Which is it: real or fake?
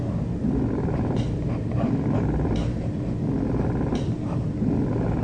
real